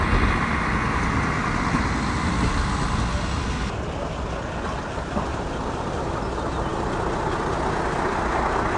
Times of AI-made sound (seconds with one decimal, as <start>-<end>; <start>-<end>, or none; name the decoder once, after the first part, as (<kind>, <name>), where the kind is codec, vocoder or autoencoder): 5.3-6.2 (vocoder, BigVGAN v2)